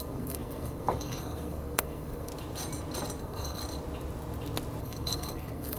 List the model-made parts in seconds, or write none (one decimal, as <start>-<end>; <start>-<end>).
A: 0.0-2.3; 3.2-3.6; 4.8-5.8